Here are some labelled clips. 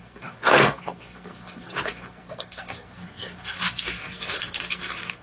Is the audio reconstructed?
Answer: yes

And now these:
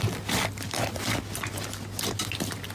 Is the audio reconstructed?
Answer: no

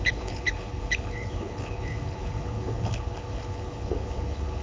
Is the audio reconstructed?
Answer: yes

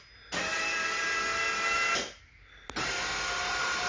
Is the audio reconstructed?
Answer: no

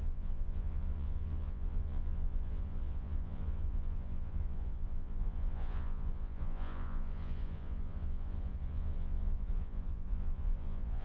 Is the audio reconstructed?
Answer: yes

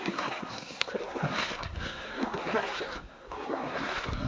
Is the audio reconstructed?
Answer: yes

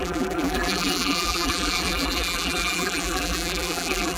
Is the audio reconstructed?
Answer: yes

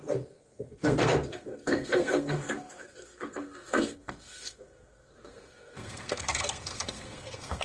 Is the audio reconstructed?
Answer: yes